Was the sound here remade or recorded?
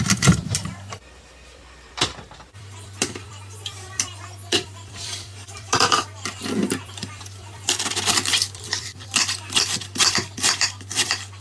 remade